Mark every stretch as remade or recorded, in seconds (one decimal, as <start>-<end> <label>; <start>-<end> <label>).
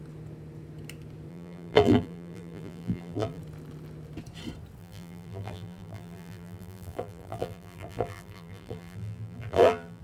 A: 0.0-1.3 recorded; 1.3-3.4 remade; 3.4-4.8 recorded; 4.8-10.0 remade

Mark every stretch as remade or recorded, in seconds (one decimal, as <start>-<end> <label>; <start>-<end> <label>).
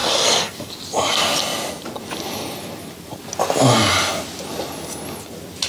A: 0.0-0.7 remade; 0.7-5.7 recorded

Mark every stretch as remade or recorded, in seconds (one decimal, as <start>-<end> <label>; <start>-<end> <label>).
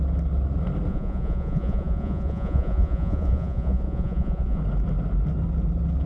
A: 0.0-0.9 recorded; 0.9-4.6 remade; 4.6-6.1 recorded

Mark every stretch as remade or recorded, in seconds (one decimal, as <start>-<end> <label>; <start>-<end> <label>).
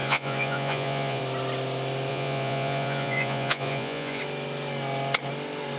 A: 0.0-1.2 remade; 1.2-2.1 recorded; 2.1-4.2 remade; 4.2-5.8 recorded